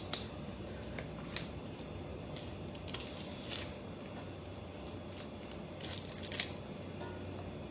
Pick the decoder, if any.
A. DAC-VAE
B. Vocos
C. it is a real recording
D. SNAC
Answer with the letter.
C